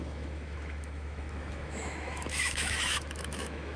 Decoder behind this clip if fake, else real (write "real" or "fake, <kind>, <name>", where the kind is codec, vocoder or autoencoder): fake, autoencoder, DAC-VAE